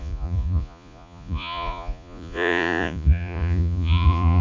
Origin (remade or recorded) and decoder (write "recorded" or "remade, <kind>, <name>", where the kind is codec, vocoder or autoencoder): remade, vocoder, Vocos